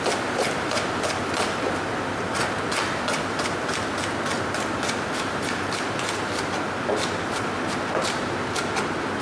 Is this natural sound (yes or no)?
yes